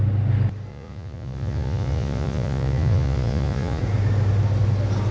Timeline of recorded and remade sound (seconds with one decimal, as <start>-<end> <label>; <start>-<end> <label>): 0.0-0.7 recorded; 0.7-3.8 remade; 3.8-5.1 recorded